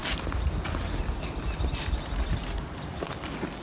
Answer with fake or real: real